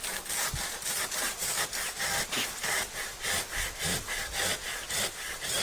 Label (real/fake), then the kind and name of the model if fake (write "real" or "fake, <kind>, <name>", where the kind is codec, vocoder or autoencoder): real